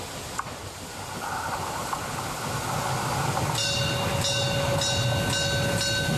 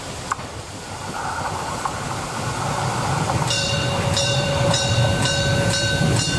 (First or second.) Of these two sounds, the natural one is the first